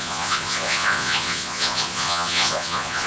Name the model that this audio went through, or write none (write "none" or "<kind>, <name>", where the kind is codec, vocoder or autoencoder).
vocoder, Vocos